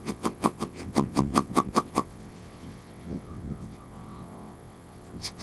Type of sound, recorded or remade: remade